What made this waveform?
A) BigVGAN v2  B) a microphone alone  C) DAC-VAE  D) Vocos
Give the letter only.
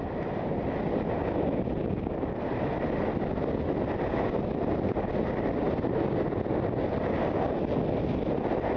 B